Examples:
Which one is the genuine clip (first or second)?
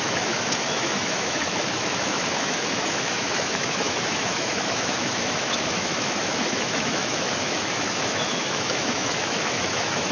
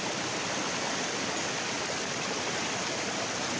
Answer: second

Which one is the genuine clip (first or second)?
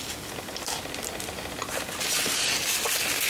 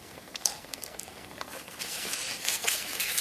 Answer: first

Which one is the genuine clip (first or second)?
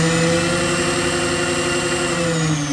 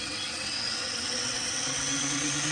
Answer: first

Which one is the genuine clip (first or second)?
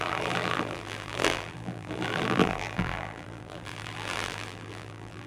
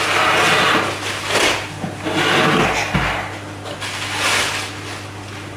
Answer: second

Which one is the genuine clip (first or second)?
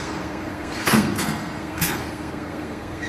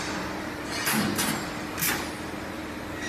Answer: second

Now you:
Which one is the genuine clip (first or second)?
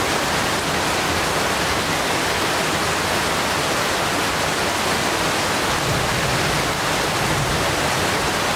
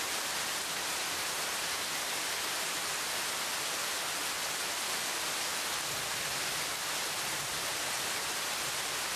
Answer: first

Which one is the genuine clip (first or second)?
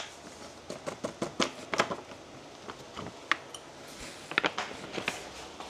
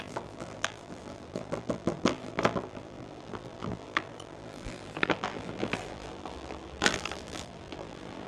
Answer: first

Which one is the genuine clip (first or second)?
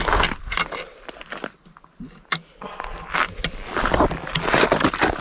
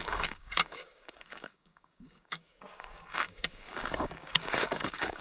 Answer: first